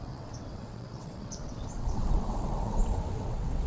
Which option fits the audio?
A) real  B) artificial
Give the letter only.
B